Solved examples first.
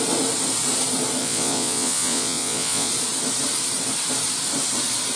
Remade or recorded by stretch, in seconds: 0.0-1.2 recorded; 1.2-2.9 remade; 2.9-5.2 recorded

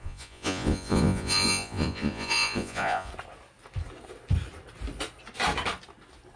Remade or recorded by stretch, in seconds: 0.0-3.1 remade; 3.1-6.4 recorded

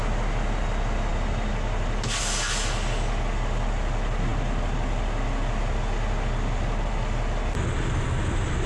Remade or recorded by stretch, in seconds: 0.0-8.7 recorded

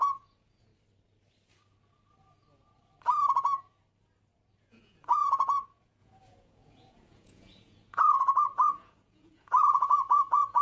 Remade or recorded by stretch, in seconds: 0.0-0.7 remade; 0.7-4.6 recorded; 4.6-10.6 remade

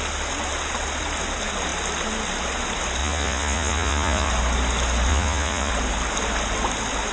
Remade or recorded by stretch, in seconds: 0.0-3.0 recorded; 3.0-4.3 remade; 4.3-5.1 recorded; 5.1-5.7 remade; 5.7-7.1 recorded

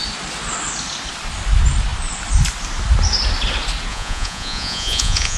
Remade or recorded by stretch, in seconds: 0.0-3.9 recorded; 3.9-5.4 remade